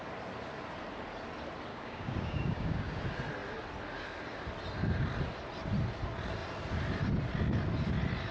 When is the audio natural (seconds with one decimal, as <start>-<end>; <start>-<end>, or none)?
0.0-1.7; 3.0-8.3